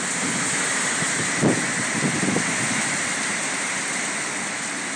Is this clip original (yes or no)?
yes